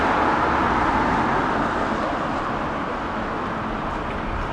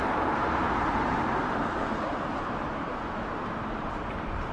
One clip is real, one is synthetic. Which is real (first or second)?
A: first